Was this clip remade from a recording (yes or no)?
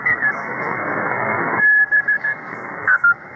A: yes